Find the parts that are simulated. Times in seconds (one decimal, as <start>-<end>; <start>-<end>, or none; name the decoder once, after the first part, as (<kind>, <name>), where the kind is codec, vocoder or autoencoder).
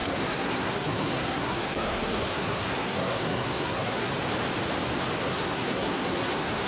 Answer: 0.0-4.1 (codec, SNAC); 5.2-6.7